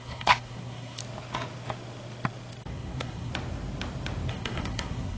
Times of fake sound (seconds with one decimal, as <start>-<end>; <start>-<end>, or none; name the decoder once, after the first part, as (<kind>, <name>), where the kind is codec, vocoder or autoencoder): 0.0-1.0 (codec, SNAC); 2.7-3.3; 4.3-5.2

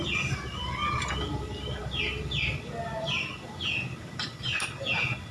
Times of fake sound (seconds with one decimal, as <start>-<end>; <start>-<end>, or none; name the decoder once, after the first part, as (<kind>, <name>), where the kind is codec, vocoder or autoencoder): none

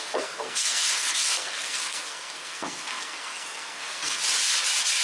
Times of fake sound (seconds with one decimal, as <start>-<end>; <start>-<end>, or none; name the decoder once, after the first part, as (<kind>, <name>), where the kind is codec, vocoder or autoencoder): 0.0-4.2 (codec, SNAC)

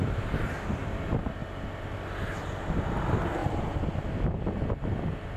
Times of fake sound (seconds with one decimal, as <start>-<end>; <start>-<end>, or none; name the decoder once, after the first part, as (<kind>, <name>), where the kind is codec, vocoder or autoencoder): none

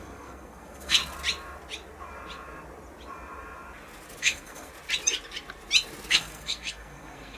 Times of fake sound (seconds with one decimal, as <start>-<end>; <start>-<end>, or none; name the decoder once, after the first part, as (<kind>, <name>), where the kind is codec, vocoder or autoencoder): 0.0-1.0 (codec, SNAC); 4.2-4.7; 6.1-7.4